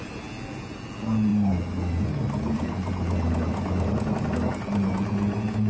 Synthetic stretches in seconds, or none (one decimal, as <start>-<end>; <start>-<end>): none